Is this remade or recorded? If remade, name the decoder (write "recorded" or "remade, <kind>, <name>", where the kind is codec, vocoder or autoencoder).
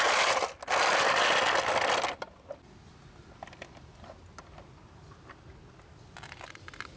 recorded